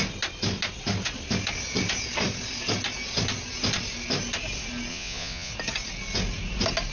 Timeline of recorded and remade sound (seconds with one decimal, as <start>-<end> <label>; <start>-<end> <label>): 0.0-4.9 recorded; 4.9-5.5 remade; 5.5-6.9 recorded